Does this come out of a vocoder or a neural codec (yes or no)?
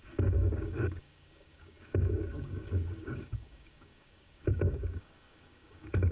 yes